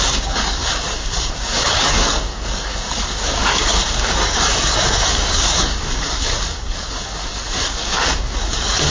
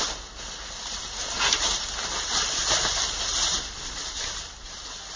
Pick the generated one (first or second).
first